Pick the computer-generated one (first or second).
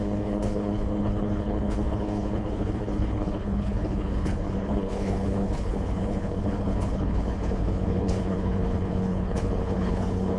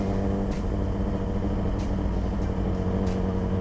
first